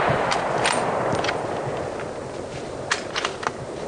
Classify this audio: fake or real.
real